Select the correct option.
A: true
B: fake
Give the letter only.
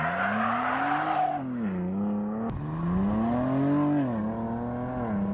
A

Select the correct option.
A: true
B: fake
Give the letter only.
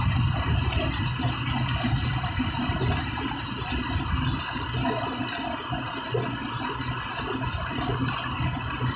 A